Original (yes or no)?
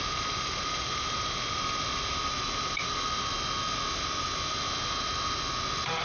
yes